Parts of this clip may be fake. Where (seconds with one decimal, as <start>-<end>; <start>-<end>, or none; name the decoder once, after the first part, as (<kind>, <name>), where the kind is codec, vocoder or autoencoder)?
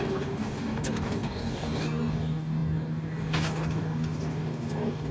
0.0-5.1 (codec, DAC)